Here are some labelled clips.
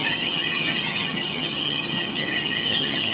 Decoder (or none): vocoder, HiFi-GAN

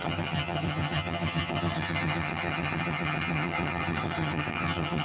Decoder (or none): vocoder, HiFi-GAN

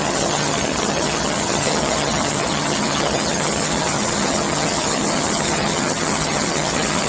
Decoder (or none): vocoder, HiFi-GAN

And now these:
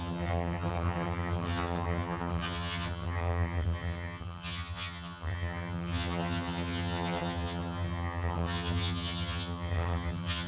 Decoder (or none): vocoder, HiFi-GAN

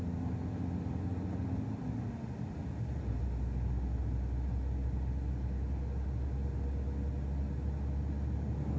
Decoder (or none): none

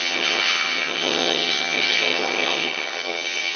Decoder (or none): vocoder, HiFi-GAN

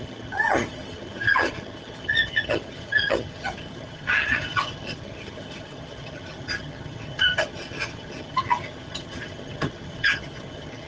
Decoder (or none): vocoder, HiFi-GAN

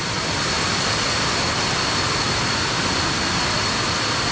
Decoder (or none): none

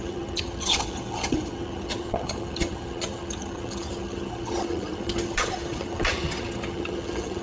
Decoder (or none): vocoder, HiFi-GAN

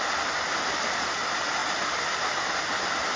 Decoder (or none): none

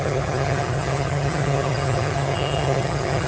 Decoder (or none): vocoder, HiFi-GAN